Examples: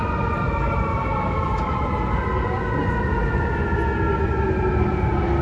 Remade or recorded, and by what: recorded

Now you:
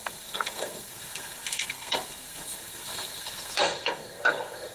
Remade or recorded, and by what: remade, codec, SNAC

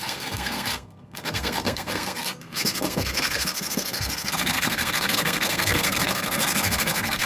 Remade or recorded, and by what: remade, codec, SNAC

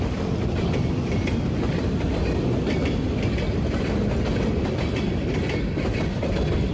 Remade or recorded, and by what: remade, vocoder, BigVGAN v2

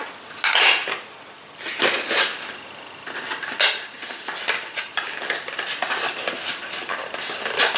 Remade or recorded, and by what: recorded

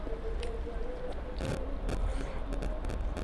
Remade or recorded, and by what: recorded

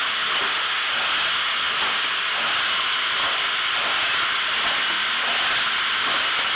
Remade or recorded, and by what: recorded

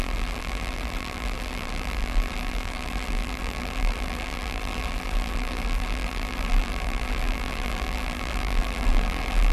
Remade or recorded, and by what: remade, vocoder, BigVGAN v2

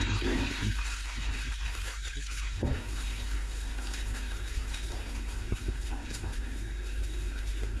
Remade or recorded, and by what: remade, codec, SNAC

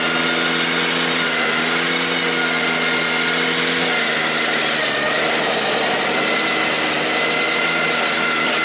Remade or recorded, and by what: recorded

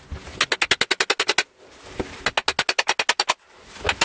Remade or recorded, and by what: recorded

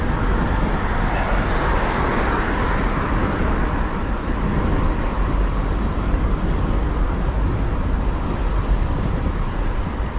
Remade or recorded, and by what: recorded